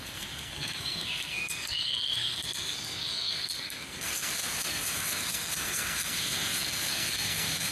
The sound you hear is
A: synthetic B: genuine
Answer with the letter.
A